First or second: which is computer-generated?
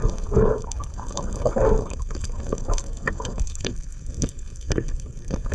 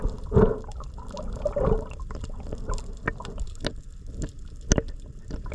first